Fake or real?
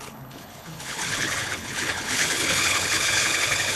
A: fake